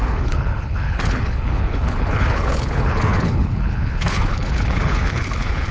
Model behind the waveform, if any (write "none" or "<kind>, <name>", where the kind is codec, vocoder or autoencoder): codec, HILCodec